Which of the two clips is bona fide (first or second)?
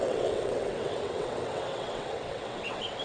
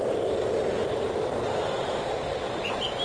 second